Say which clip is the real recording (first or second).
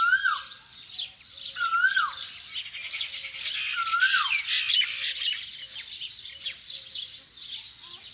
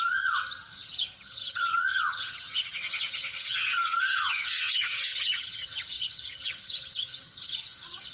first